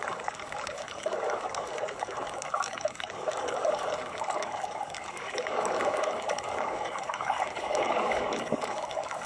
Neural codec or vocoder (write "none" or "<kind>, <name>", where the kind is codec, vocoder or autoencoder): codec, DAC